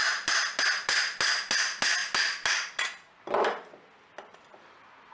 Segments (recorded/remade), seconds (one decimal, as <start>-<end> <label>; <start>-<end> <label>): 0.0-5.1 recorded